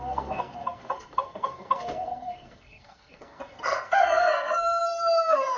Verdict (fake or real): fake